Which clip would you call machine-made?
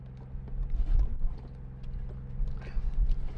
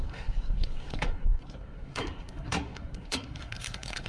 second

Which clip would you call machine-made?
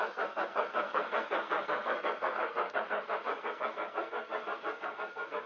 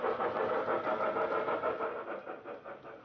first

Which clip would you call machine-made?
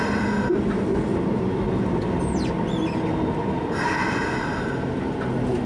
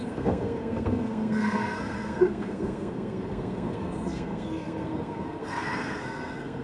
second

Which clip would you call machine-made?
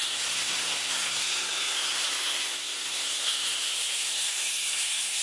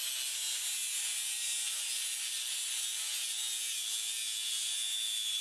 first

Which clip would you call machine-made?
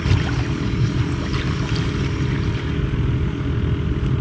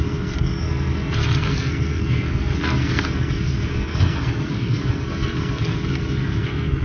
second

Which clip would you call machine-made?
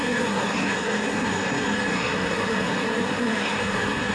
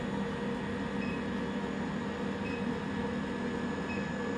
first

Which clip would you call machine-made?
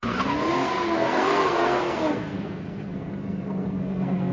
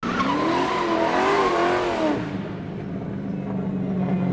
first